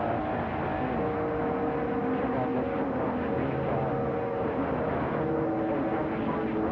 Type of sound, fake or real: real